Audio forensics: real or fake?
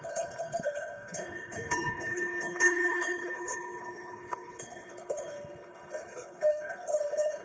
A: fake